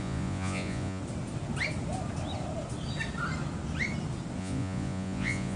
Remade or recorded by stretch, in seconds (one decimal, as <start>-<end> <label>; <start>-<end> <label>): 0.0-1.0 remade; 1.0-4.4 recorded; 4.4-5.6 remade